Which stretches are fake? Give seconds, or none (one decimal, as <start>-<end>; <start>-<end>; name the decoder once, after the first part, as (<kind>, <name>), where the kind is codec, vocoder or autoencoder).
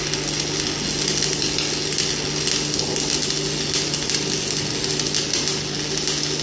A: none